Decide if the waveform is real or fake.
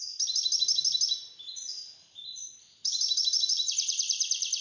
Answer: fake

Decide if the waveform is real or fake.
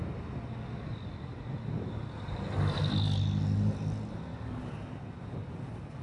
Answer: real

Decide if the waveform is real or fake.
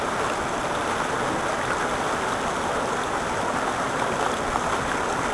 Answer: real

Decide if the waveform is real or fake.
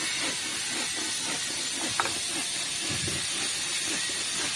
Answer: real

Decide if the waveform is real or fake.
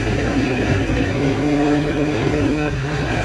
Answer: fake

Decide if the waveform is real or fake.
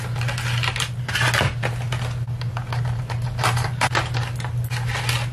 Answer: real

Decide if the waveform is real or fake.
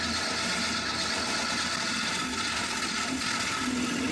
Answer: real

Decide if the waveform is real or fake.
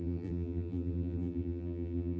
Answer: fake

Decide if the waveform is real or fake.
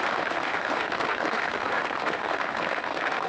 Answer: fake